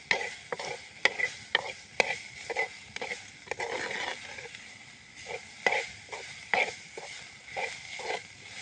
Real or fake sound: real